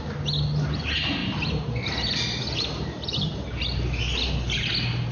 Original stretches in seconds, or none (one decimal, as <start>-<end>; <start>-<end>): 0.0-5.1